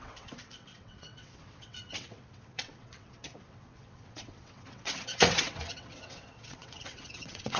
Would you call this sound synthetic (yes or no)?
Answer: yes